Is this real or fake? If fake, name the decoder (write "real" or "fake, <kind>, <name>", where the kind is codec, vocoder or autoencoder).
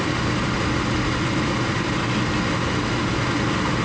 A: real